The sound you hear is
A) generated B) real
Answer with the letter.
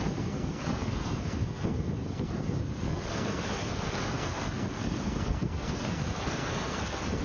A